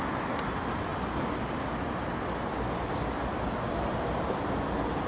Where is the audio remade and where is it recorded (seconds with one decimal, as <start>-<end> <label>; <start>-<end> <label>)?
0.0-0.9 remade; 0.9-3.7 recorded; 3.7-5.1 remade